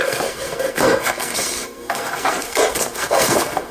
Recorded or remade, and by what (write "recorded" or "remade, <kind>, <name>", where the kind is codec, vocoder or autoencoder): remade, codec, SNAC